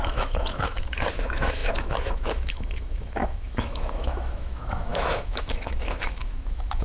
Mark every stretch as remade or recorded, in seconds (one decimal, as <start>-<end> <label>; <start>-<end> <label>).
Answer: 0.0-6.8 remade

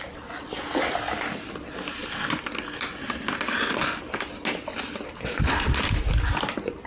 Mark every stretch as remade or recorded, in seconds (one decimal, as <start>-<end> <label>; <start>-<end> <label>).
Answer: 0.0-6.9 recorded

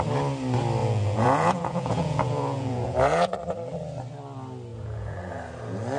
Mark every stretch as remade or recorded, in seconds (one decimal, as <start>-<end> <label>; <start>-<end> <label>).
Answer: 0.0-0.8 recorded; 0.8-3.3 remade; 3.3-4.7 recorded; 4.7-5.2 remade; 5.2-6.0 recorded